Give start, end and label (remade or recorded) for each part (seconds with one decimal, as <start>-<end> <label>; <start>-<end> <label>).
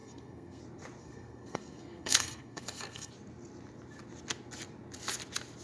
0.0-0.6 remade; 0.6-1.0 recorded; 1.0-3.1 remade; 3.1-5.6 recorded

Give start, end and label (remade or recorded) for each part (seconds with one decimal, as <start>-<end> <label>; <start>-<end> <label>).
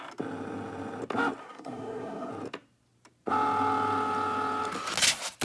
0.0-1.4 recorded; 1.4-2.3 remade; 2.3-5.4 recorded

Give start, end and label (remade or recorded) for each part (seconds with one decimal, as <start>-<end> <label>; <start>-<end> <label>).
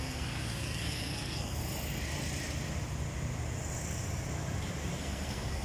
0.0-1.6 remade; 1.6-5.0 recorded; 5.0-5.6 remade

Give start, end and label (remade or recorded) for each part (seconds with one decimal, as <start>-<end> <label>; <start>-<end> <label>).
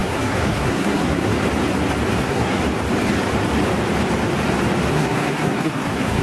0.0-1.3 remade; 1.3-2.2 recorded; 2.2-2.6 remade; 2.6-4.9 recorded; 4.9-6.2 remade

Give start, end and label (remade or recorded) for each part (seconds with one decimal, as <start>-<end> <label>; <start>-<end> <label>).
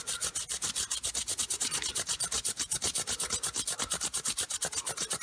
0.0-5.2 recorded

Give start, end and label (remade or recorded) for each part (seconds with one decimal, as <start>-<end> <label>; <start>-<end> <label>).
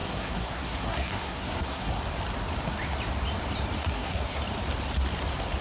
0.0-2.0 remade; 2.0-3.8 recorded; 3.8-4.4 remade; 4.4-5.6 recorded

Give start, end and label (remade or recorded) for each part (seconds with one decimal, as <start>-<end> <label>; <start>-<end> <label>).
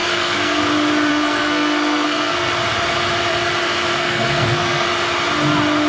0.0-0.6 remade; 0.6-1.1 recorded; 1.1-2.5 remade; 2.5-3.9 recorded; 3.9-4.9 remade; 4.9-5.9 recorded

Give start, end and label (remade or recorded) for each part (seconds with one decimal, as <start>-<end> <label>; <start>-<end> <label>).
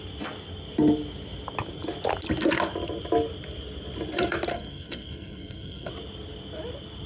0.0-4.5 recorded; 4.5-5.9 remade; 5.9-7.1 recorded